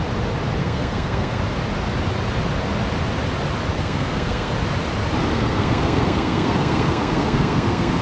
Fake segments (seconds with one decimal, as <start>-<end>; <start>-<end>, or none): 0.6-1.4; 3.7-4.5; 5.3-8.0